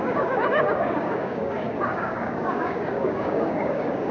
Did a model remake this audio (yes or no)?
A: yes